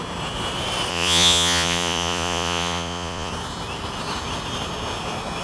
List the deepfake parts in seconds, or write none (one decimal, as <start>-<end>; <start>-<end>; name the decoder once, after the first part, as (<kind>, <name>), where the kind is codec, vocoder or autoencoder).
0.9-3.3 (vocoder, Vocos)

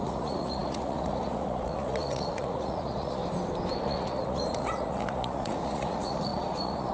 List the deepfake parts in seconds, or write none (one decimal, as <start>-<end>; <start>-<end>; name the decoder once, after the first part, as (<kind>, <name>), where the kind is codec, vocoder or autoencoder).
0.0-3.2 (vocoder, Vocos); 3.8-6.9

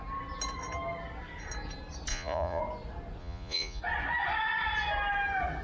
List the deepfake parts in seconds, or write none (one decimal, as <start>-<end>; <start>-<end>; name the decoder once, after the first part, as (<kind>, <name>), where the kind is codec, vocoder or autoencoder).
2.1-2.6 (vocoder, Vocos); 3.2-3.8

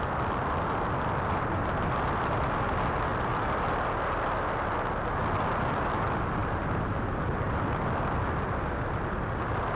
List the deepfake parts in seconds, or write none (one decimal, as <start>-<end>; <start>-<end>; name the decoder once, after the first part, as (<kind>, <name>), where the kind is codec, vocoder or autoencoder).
none